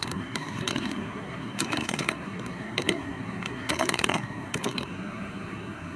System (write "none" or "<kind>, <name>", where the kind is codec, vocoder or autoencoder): codec, SNAC